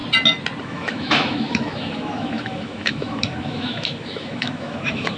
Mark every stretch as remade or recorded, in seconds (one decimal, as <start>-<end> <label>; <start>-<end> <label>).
0.0-0.6 recorded; 0.6-5.2 remade